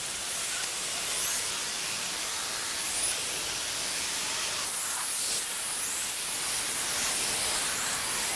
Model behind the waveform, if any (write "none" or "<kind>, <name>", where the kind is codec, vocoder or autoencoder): none